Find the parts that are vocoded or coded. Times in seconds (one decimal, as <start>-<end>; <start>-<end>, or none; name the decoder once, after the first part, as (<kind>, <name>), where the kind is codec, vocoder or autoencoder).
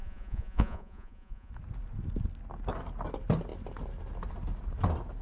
0.0-1.5 (vocoder, Vocos)